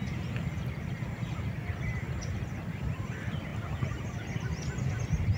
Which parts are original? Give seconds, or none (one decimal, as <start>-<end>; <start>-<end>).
0.0-5.4